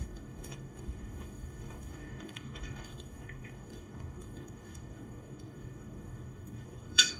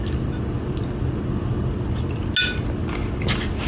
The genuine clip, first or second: second